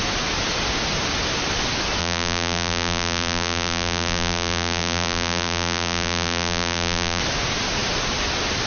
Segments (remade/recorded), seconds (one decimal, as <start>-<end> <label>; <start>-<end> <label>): 0.0-2.0 recorded; 2.0-7.2 remade; 7.2-8.7 recorded